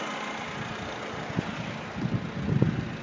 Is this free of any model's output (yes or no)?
yes